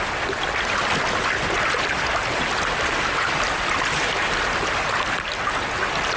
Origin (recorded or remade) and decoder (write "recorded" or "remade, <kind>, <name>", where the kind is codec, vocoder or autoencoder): recorded